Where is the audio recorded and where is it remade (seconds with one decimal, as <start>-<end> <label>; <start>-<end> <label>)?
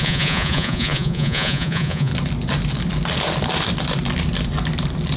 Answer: 0.0-2.1 remade; 2.1-5.2 recorded